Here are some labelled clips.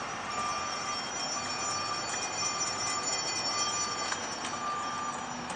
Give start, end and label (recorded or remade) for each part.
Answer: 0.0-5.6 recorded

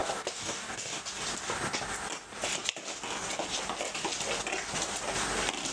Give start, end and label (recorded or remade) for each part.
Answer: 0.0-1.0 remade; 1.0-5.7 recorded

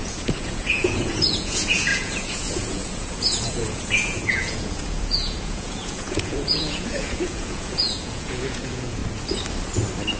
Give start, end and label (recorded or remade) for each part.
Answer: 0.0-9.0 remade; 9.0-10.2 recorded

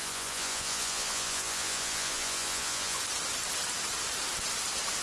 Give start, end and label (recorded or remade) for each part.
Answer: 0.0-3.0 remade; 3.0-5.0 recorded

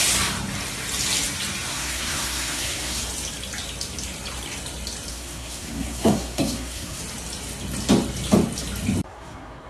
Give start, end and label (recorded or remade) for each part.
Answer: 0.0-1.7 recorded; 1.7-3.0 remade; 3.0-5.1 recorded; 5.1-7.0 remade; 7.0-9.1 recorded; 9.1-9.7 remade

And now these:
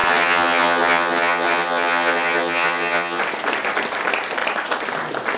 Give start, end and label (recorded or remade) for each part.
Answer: 0.0-3.2 remade; 3.2-5.4 recorded

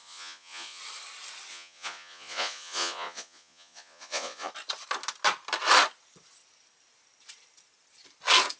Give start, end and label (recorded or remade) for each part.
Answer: 0.0-0.8 remade; 0.8-1.5 recorded; 1.5-4.5 remade; 4.5-8.6 recorded

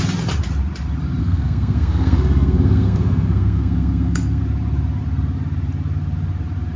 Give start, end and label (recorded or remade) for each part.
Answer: 0.0-1.2 recorded; 1.2-4.4 remade; 4.4-6.8 recorded